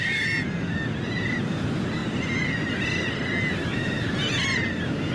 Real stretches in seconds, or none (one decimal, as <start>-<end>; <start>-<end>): 0.0-3.6; 4.1-5.1

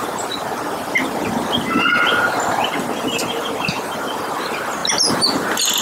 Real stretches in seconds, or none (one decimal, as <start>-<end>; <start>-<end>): 0.0-5.8

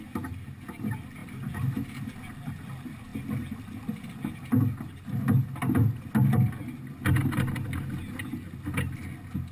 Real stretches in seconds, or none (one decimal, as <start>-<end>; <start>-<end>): 0.0-9.5

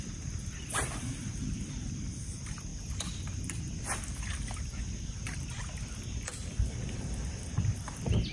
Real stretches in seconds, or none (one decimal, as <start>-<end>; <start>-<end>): 0.0-8.3

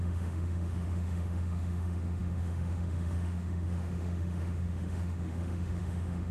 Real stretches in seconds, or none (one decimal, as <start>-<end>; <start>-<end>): none

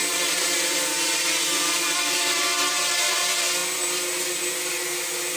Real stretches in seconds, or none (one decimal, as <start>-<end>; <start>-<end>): 0.0-5.4

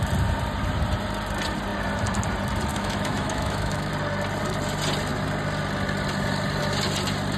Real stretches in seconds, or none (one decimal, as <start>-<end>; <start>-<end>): 0.0-2.7; 3.9-7.4